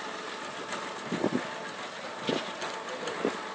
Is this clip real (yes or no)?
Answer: yes